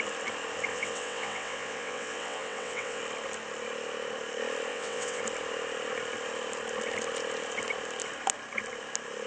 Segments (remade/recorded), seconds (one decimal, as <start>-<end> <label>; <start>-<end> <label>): 0.0-0.7 recorded; 0.7-3.0 remade; 3.0-4.7 recorded; 4.7-5.2 remade; 5.2-9.3 recorded

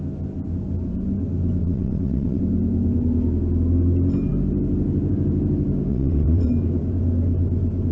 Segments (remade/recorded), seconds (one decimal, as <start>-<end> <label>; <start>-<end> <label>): 0.0-1.6 recorded; 1.6-2.4 remade; 2.4-5.9 recorded; 5.9-6.5 remade; 6.5-7.9 recorded